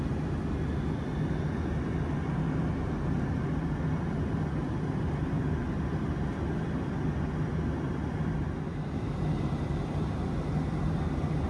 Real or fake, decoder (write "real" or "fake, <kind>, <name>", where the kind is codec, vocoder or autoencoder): real